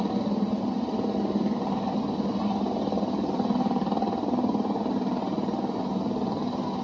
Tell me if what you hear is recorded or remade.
recorded